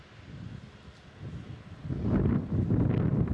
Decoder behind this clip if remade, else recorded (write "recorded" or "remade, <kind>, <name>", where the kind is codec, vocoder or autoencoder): recorded